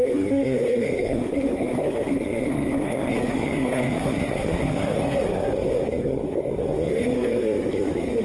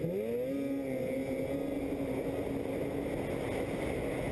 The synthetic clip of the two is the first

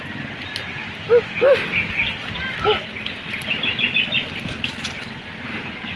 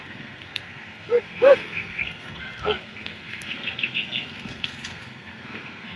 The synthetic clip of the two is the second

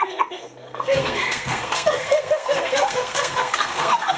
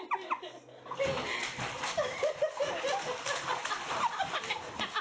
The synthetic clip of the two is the first